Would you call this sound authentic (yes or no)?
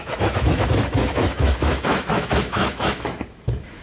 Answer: no